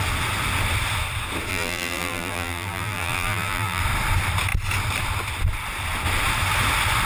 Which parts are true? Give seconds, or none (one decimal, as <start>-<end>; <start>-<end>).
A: 0.0-1.5; 3.8-7.1